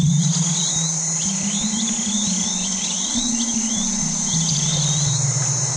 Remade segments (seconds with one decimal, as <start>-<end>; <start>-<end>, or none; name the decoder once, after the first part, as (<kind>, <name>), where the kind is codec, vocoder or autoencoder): 2.6-3.3 (vocoder, Vocos)